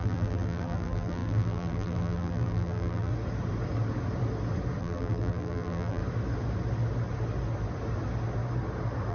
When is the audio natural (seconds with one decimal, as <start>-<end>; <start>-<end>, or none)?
3.1-4.8; 6.0-9.1